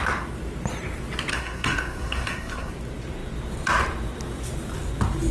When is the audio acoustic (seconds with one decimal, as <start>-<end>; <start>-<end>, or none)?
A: 0.0-1.3; 2.7-5.3